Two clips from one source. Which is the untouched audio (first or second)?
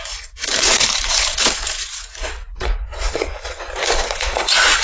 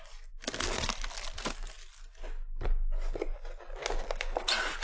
second